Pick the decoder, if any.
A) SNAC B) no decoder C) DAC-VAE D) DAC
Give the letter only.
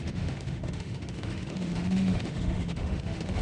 C